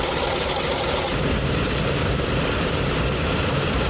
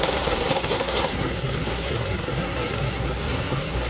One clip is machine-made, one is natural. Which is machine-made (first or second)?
second